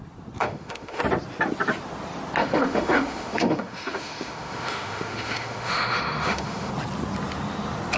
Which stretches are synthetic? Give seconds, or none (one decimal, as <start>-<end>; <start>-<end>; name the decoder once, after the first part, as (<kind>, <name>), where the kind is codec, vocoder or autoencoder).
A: 0.4-1.0 (autoencoder, DAC-VAE); 2.4-6.7